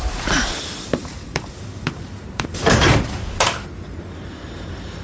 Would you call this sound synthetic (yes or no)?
yes